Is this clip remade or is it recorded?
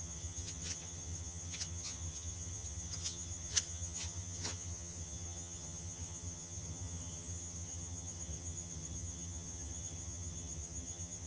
remade